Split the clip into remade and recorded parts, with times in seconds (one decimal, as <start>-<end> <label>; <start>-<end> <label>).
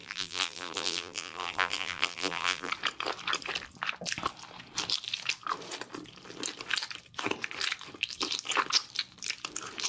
0.0-2.7 remade; 2.7-9.9 recorded